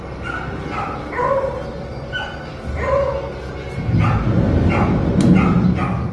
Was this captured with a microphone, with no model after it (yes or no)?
yes